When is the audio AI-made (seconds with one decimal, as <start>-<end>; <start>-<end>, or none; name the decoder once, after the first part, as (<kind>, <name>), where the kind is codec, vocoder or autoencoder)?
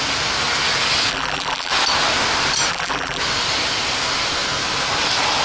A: 1.1-1.7 (vocoder, BigVGAN v2); 2.7-3.2